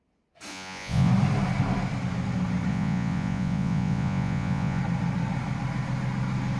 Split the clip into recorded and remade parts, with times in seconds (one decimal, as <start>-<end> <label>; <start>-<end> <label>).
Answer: 0.0-0.5 recorded; 0.5-1.1 remade; 1.1-2.7 recorded; 2.7-4.8 remade; 4.8-6.6 recorded